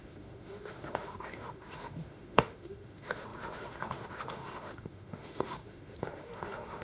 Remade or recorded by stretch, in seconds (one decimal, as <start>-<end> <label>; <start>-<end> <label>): 0.0-6.8 remade